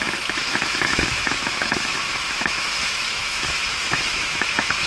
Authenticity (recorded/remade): remade